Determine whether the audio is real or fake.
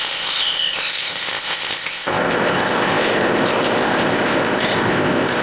fake